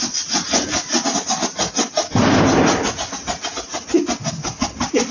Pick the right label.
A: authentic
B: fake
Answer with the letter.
A